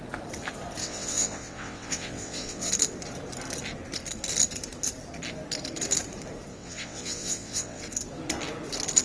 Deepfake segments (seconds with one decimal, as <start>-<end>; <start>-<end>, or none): 0.8-2.7; 6.5-7.8